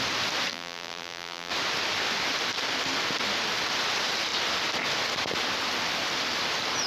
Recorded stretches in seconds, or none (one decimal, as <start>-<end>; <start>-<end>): 0.0-0.5; 1.5-6.9

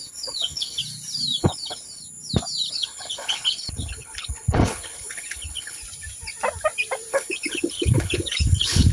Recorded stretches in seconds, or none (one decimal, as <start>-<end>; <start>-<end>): 0.8-1.4; 2.0-2.7; 5.8-7.1

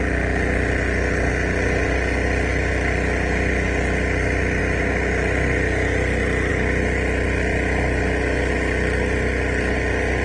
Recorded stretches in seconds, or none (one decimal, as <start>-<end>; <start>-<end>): 0.0-10.2

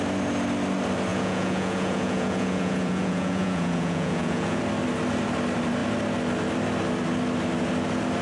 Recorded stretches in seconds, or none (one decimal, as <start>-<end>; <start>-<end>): 0.0-1.1; 4.6-8.2

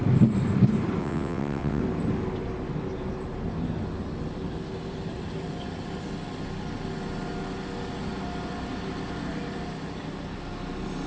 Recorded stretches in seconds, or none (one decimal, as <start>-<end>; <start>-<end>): 0.0-1.0; 1.8-11.1

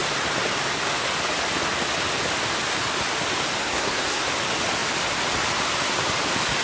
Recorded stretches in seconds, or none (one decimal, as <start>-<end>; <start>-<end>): 0.0-3.6; 4.3-6.6

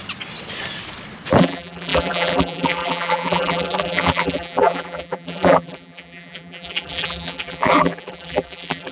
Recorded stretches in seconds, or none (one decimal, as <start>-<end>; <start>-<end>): 0.0-1.4

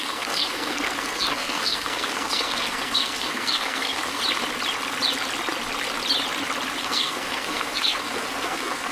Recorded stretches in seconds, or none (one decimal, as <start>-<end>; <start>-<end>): 4.2-6.8